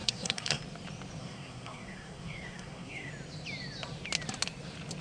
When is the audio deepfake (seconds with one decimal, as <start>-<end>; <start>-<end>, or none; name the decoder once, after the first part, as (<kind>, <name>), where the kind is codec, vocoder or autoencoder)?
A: 0.0-0.6 (codec, SNAC); 1.2-3.1